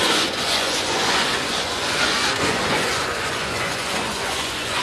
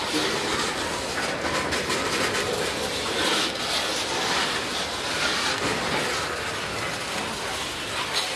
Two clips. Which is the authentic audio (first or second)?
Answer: second